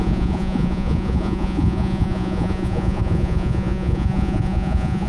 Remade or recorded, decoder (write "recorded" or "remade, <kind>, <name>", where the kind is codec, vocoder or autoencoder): remade, vocoder, Vocos